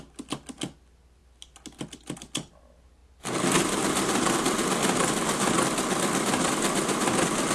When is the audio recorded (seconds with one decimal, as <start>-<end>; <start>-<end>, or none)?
0.0-7.5